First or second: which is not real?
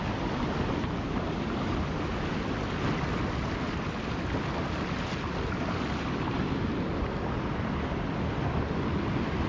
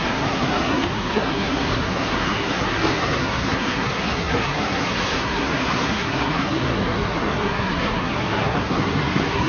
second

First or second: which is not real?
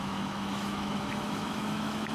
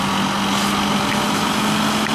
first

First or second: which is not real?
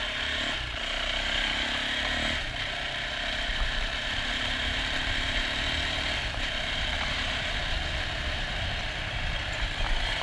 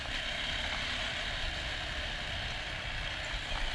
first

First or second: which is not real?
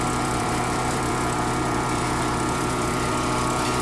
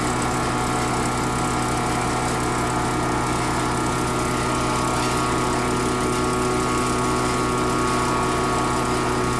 first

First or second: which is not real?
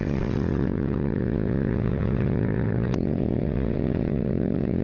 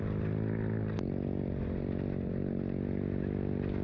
first